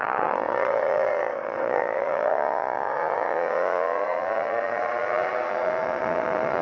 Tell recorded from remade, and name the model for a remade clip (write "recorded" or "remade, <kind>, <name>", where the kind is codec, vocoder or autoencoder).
remade, vocoder, Vocos